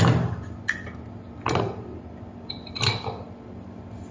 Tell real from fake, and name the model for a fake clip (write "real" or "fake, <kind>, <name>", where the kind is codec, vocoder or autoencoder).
fake, vocoder, BigVGAN v2